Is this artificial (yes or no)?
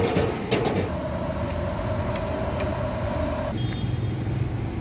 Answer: no